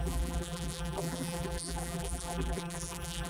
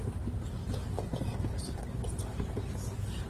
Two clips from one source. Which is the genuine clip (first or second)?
second